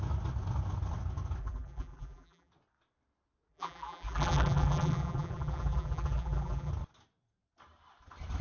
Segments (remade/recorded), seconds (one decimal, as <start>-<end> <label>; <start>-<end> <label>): 0.0-1.4 recorded; 1.4-2.5 remade; 2.5-3.5 recorded; 3.5-6.7 remade; 6.7-8.4 recorded